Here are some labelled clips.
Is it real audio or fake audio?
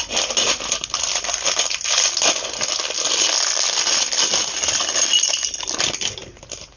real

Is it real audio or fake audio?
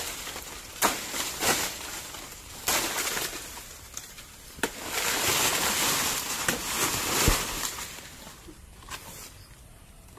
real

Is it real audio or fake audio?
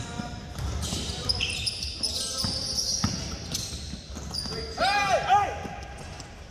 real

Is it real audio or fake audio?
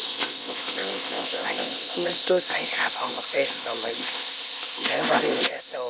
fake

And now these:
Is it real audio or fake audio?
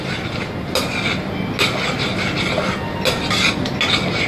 real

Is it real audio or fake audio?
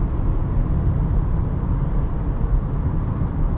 fake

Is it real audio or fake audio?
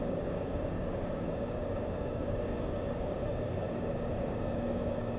fake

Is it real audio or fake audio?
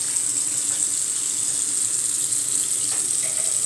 real